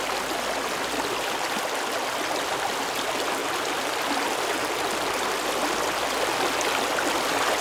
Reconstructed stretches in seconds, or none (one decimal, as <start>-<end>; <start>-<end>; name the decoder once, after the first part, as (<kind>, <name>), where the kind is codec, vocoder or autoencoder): 3.4-4.1 (vocoder, BigVGAN v2)